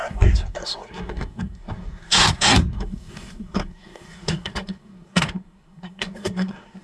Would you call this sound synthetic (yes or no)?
yes